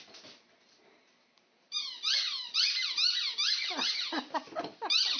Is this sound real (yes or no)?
no